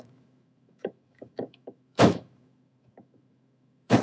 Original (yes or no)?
no